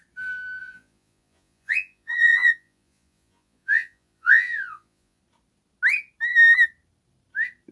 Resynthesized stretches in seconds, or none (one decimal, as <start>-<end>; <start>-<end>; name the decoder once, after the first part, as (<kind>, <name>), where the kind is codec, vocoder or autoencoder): 0.6-5.2 (vocoder, Vocos)